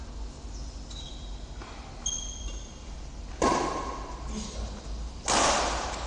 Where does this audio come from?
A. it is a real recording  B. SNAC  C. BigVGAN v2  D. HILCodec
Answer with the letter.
A